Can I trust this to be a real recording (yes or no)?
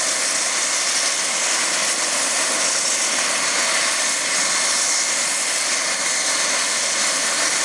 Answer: yes